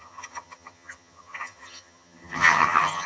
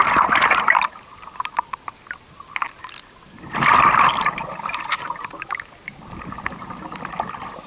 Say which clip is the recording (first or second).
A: second